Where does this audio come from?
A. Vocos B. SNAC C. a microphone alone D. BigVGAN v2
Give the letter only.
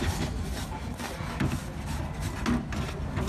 C